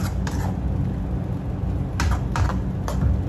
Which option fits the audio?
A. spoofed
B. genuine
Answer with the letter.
B